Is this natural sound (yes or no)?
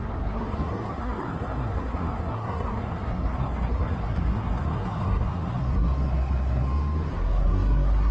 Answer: no